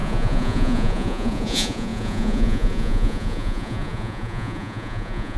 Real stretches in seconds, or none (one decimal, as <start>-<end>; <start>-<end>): none